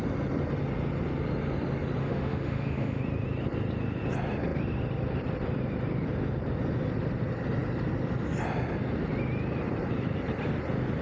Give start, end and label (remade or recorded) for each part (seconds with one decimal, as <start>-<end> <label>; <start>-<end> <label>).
0.0-2.0 recorded; 2.0-3.0 remade; 3.0-11.0 recorded